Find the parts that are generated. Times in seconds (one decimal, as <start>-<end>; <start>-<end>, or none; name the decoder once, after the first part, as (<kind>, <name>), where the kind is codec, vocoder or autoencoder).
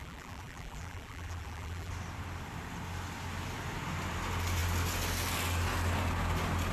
0.0-1.9 (vocoder, BigVGAN v2)